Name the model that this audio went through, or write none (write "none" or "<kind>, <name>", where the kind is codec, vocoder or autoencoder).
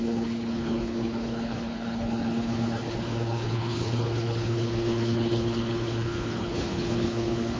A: codec, HILCodec